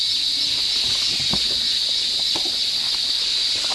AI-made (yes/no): no